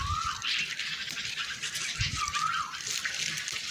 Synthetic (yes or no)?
no